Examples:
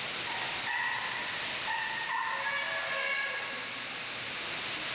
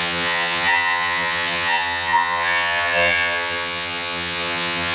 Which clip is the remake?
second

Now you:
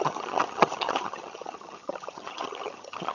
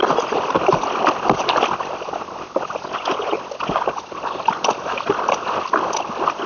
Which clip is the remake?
first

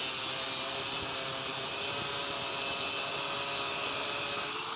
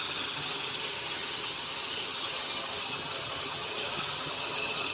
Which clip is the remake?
second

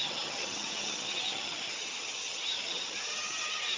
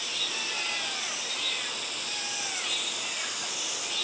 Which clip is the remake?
first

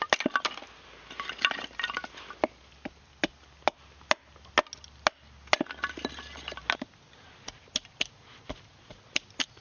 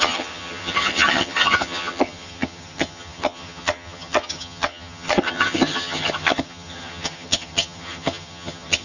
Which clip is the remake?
second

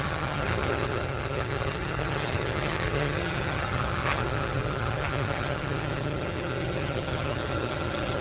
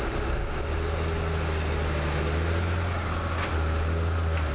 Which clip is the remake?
first